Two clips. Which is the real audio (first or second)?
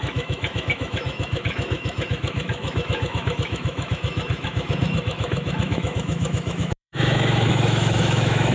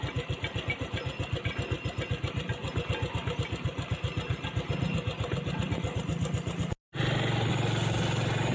second